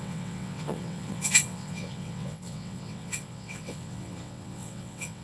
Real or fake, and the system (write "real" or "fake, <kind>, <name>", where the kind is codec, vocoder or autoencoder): fake, vocoder, WaveNeXt